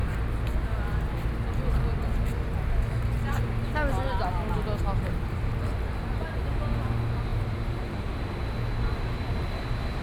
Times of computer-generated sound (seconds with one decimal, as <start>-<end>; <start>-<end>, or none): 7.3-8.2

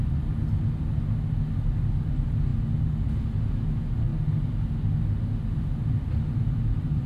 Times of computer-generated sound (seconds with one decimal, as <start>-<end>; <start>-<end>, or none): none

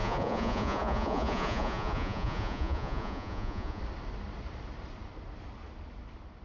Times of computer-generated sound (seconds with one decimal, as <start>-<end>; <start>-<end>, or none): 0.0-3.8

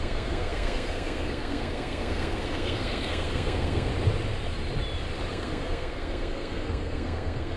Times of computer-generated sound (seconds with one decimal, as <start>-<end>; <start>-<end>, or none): 0.0-3.9; 5.3-7.6

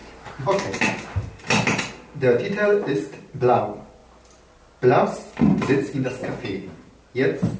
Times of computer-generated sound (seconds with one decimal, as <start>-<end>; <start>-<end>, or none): 6.2-6.9